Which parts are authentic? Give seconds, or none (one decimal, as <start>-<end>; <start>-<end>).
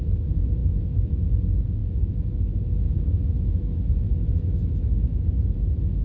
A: 0.0-0.6; 1.2-1.8; 5.4-6.0